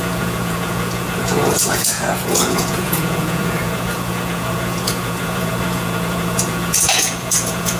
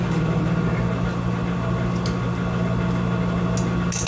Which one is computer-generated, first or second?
first